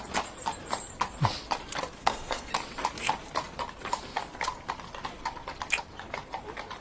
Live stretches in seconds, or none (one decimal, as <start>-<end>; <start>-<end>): 0.0-2.0; 2.5-6.8